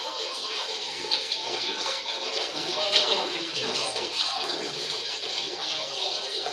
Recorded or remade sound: remade